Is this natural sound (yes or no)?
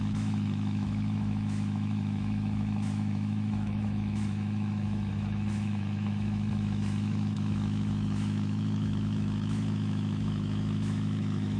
no